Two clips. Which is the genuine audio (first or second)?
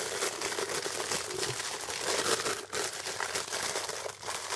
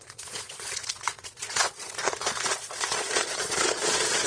first